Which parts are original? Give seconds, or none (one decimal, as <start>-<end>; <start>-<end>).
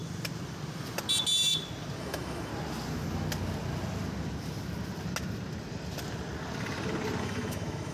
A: 0.0-2.0; 2.5-7.2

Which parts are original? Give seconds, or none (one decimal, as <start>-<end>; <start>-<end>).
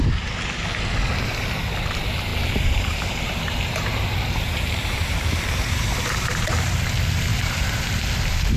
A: 0.0-2.3; 6.8-7.3; 7.8-8.6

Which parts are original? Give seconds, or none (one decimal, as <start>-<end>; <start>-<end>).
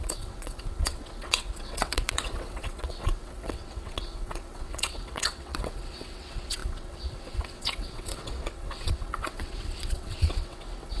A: none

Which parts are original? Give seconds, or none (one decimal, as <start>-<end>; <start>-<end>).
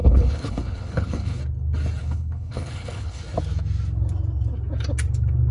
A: 1.4-2.0; 3.2-5.5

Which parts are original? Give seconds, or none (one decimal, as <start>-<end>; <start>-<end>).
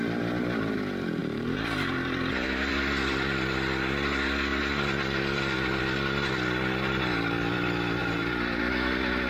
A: 0.0-1.2; 2.7-8.0; 8.6-9.3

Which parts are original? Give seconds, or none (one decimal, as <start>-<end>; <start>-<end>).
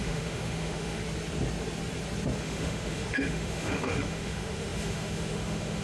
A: 1.0-2.4